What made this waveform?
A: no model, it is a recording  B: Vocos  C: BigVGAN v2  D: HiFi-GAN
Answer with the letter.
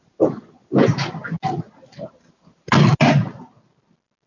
A